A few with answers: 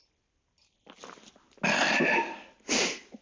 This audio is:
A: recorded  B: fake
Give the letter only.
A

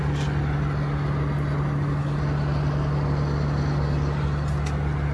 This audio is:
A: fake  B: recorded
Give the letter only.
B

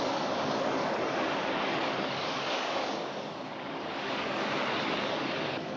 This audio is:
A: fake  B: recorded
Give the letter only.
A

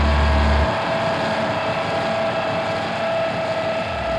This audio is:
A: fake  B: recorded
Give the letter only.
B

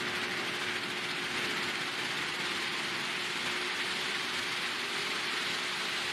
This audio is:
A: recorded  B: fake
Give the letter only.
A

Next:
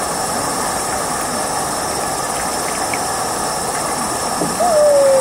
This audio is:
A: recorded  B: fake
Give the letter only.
A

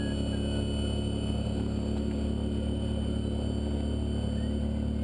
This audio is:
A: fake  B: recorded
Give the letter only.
B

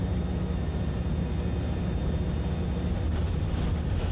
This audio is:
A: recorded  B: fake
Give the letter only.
A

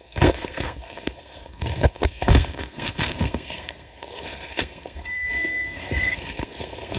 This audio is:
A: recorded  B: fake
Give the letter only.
B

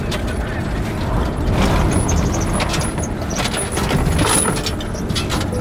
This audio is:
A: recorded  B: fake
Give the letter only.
A